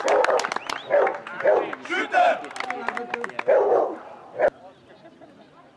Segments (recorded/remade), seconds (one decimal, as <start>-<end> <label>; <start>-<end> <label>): 0.0-5.8 recorded